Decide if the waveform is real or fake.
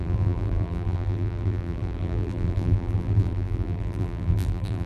fake